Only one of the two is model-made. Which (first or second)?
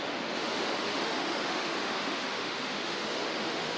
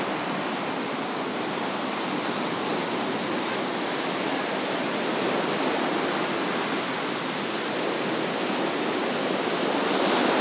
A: first